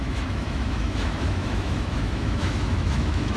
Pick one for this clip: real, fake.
fake